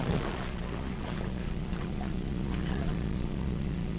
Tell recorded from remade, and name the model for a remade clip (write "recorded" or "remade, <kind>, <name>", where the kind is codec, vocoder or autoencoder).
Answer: remade, vocoder, Vocos